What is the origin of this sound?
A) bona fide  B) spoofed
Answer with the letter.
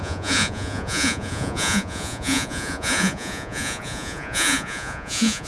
B